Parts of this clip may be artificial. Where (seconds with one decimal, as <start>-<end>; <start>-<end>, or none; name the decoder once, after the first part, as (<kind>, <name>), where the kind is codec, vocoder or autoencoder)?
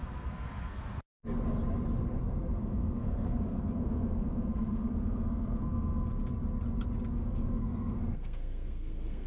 0.0-0.8 (codec, SNAC); 2.2-6.1; 7.1-9.3